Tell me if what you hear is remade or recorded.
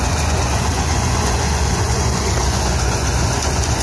remade